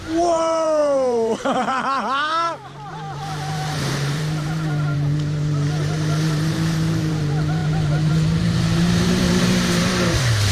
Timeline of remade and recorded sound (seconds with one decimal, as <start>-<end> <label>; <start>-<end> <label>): 0.0-10.5 remade